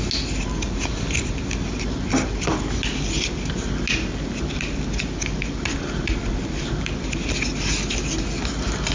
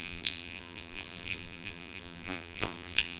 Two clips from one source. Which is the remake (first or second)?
second